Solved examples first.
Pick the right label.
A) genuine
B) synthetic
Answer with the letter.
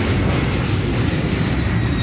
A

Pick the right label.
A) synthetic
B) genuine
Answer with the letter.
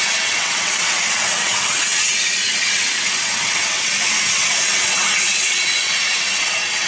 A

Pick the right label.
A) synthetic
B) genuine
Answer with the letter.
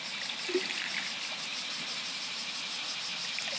B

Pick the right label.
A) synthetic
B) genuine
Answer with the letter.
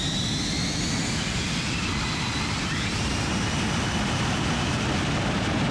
B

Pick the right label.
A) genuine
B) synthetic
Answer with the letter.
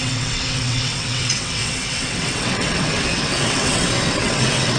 B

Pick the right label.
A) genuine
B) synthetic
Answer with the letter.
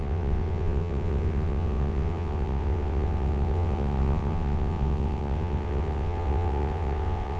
B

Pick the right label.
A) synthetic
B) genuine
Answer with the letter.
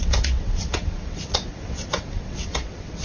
A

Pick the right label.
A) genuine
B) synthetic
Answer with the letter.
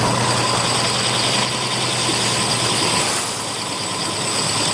A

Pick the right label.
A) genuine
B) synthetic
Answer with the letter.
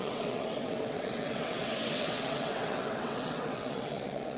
B